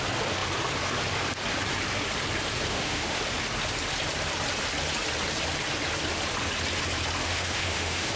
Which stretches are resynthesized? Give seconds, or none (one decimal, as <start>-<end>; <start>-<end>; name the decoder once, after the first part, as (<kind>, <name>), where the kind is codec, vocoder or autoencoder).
2.7-3.2 (autoencoder, DAC-VAE); 7.2-8.2